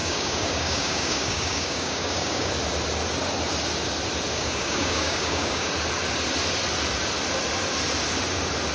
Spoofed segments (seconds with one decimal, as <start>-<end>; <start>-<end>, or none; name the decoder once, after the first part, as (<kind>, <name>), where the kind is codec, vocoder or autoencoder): 0.0-2.5 (codec, DAC); 4.3-5.7

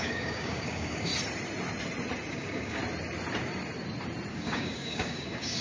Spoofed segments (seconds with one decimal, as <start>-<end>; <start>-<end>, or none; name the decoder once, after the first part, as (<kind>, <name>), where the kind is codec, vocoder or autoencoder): 0.0-1.1 (codec, DAC); 2.3-2.8; 4.3-5.6

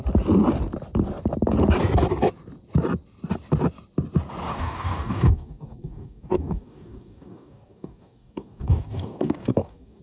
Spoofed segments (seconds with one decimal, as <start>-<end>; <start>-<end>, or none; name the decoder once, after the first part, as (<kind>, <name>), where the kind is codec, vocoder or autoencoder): 4.5-10.0 (codec, DAC)

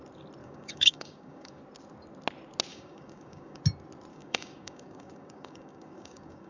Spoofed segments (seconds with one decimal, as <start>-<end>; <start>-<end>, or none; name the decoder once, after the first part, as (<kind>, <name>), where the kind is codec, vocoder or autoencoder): 0.4-1.6 (codec, DAC); 2.7-3.6; 4.1-6.5

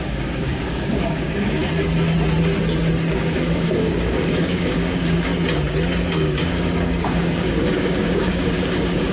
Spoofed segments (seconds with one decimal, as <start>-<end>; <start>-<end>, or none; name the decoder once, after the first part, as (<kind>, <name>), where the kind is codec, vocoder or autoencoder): 0.0-1.6 (codec, DAC); 3.1-5.3; 6.0-9.1